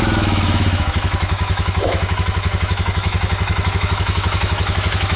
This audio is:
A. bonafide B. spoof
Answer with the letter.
B